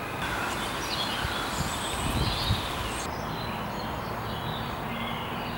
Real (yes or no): yes